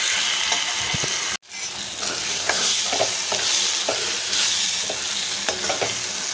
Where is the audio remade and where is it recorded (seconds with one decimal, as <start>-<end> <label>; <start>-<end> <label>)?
0.0-2.3 recorded; 2.3-2.8 remade; 2.8-6.3 recorded